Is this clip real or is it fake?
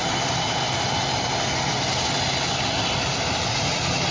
real